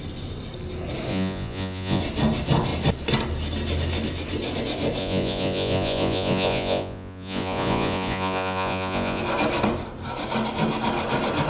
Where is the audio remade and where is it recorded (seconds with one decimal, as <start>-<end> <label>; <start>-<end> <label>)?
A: 0.0-1.1 recorded; 1.1-2.0 remade; 2.0-5.0 recorded; 5.0-9.2 remade; 9.2-11.5 recorded